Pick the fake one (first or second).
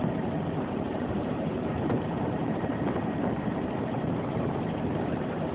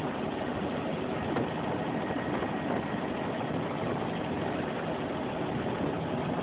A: first